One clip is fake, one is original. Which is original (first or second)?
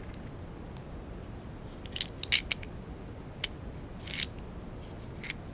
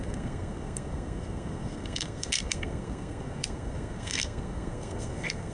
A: first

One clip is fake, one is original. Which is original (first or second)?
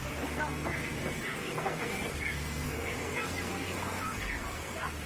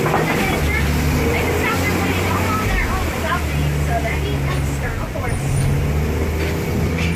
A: second